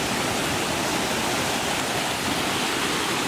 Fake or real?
real